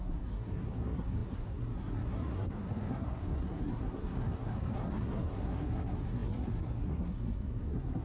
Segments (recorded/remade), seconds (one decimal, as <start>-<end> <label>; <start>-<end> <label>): 0.0-8.0 remade